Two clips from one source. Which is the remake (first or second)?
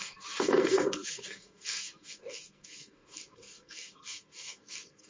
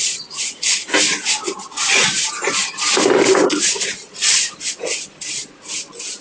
first